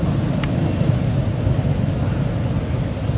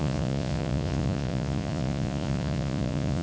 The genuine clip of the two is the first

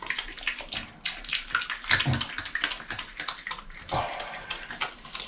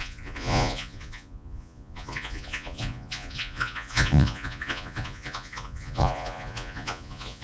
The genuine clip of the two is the first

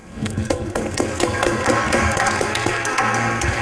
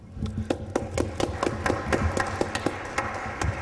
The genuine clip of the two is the second